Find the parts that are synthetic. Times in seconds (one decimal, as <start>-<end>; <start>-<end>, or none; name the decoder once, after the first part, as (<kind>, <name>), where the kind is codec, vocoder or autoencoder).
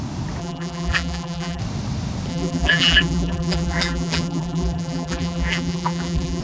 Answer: 0.4-1.6 (vocoder, BigVGAN v2); 2.3-6.4